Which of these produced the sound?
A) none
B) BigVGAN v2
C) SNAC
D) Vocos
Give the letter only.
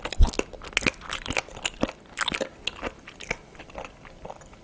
A